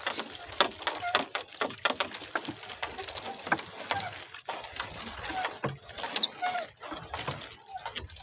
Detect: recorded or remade recorded